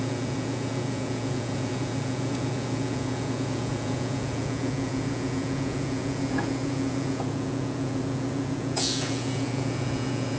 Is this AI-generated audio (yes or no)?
yes